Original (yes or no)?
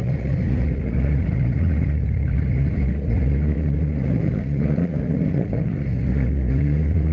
no